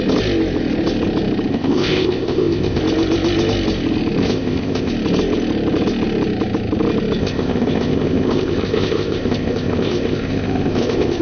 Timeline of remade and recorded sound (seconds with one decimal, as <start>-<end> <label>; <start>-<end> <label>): 0.0-1.5 recorded; 1.5-2.8 remade; 2.8-4.2 recorded; 4.2-4.9 remade; 4.9-7.2 recorded; 7.2-11.2 remade